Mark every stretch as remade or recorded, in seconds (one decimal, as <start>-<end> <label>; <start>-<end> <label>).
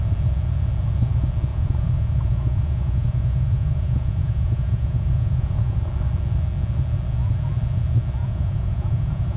0.0-1.5 recorded; 1.5-5.9 remade; 5.9-8.2 recorded; 8.2-9.4 remade